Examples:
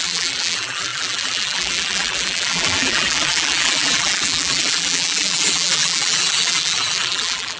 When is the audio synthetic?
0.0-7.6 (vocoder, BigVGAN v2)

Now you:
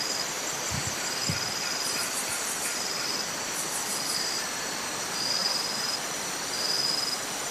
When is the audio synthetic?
0.0-1.2 (vocoder, BigVGAN v2); 2.7-7.5

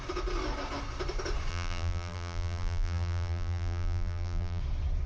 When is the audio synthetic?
1.5-4.6 (vocoder, BigVGAN v2)

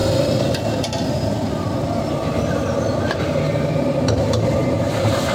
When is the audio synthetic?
2.4-5.3 (vocoder, BigVGAN v2)

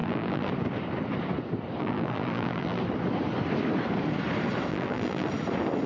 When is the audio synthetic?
0.0-0.5 (vocoder, BigVGAN v2); 1.8-2.8; 4.7-5.3

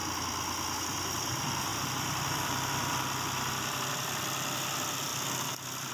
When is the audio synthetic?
0.8-5.9 (vocoder, BigVGAN v2)

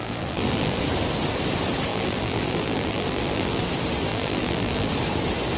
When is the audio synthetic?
0.0-0.8 (vocoder, BigVGAN v2); 1.9-3.6; 4.1-4.9